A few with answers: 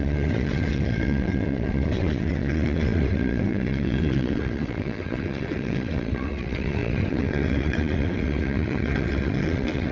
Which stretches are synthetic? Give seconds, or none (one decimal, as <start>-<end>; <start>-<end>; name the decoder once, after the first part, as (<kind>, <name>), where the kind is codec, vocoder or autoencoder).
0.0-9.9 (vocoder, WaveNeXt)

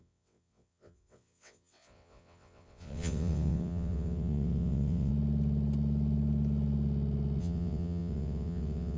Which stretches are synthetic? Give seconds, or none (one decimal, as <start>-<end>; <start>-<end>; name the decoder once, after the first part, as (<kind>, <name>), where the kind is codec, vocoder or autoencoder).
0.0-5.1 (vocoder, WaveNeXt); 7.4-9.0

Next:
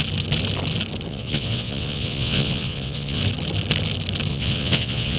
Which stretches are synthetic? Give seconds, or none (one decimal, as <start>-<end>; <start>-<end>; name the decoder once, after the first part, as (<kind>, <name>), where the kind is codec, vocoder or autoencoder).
1.1-3.2 (vocoder, WaveNeXt); 4.3-5.2

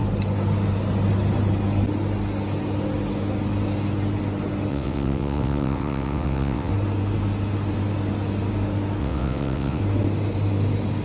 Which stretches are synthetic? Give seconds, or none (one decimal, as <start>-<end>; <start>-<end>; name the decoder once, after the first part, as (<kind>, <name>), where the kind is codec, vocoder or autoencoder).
4.7-6.7 (vocoder, WaveNeXt); 9.0-9.8

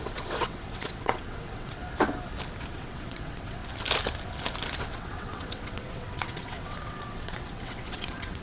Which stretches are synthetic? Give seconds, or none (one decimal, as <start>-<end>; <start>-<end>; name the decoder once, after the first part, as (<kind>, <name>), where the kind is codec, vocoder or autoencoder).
0.0-1.8 (vocoder, WaveNeXt); 2.7-3.6; 4.8-8.4